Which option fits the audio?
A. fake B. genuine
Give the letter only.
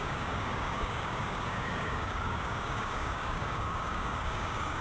A